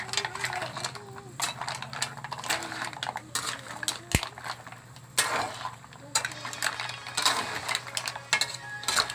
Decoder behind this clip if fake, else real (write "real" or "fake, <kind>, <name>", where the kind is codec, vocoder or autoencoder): real